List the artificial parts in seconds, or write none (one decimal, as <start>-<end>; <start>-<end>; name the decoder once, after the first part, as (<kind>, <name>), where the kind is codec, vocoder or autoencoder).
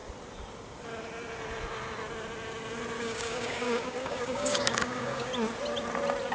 3.0-5.3 (codec, DAC)